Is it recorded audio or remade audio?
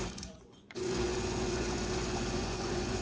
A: remade